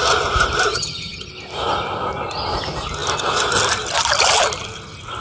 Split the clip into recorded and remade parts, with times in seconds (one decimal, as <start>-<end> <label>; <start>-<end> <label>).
0.0-0.7 recorded; 0.7-1.3 remade; 1.3-5.2 recorded